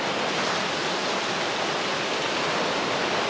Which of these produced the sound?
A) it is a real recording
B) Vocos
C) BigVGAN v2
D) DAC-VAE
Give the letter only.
A